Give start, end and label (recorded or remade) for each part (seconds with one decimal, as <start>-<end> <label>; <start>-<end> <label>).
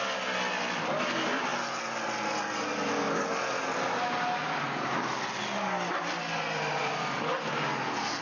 0.0-8.2 recorded